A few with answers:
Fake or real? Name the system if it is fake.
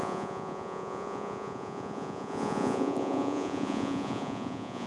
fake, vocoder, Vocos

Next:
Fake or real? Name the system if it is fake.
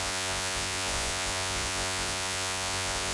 fake, vocoder, Vocos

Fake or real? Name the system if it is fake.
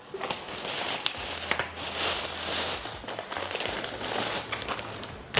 real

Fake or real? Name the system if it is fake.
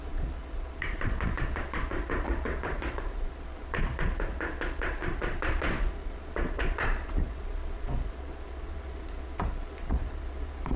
fake, vocoder, Vocos